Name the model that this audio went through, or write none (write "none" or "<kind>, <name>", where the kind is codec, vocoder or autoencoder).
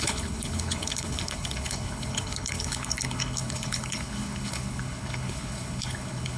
codec, HILCodec